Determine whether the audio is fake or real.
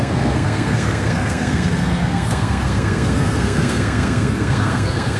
fake